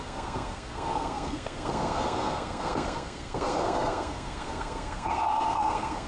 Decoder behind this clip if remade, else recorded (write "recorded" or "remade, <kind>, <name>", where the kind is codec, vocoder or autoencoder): remade, codec, SNAC